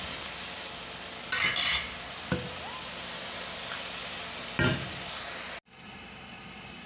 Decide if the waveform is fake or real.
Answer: real